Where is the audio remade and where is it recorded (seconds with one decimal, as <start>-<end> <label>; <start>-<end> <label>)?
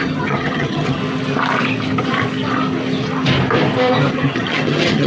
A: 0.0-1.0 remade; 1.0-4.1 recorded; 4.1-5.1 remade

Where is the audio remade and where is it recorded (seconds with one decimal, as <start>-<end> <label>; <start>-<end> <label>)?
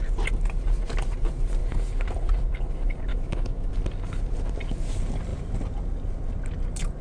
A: 0.0-3.1 recorded; 3.1-3.7 remade; 3.7-7.0 recorded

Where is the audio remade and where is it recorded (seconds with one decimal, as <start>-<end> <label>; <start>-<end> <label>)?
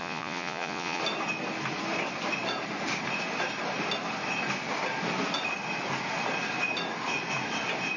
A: 0.0-1.0 remade; 1.0-8.0 recorded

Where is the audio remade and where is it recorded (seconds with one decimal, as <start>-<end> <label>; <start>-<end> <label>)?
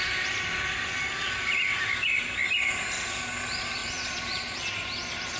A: 0.0-3.8 recorded; 3.8-4.7 remade; 4.7-5.4 recorded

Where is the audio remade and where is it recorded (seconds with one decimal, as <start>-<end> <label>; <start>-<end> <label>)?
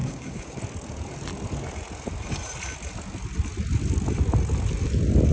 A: 0.0-0.6 remade; 0.6-5.3 recorded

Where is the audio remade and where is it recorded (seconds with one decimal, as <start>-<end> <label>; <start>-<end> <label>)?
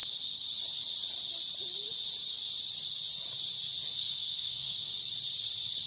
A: 0.0-3.9 recorded; 3.9-4.9 remade; 4.9-5.9 recorded